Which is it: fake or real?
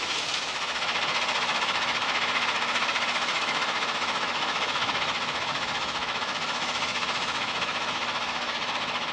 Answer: fake